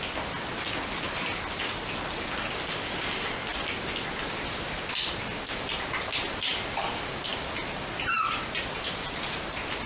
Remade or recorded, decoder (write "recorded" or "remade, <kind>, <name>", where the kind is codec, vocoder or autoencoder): recorded